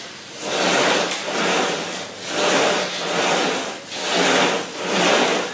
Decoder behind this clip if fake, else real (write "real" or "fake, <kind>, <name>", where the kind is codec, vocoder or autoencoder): real